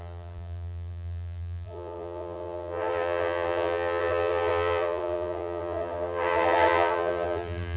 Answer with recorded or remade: remade